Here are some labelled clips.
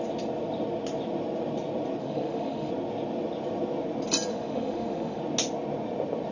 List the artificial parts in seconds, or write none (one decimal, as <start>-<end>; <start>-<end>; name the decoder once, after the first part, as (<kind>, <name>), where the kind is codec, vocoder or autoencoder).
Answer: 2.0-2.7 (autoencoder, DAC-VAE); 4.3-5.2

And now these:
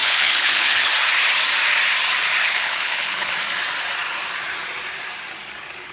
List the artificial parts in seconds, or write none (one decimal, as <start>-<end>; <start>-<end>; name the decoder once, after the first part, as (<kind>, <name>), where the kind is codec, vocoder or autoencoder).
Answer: 0.0-0.9 (codec, HILCodec); 2.4-3.3

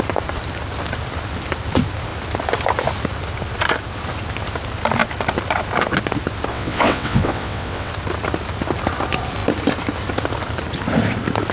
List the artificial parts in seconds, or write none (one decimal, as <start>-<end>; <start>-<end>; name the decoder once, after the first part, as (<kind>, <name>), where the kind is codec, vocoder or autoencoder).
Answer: 6.5-7.9 (vocoder, WaveNeXt)

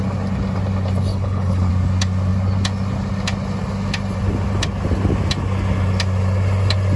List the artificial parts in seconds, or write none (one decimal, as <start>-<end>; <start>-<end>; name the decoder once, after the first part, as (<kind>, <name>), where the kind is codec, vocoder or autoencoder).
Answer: 1.1-1.7 (codec, HILCodec)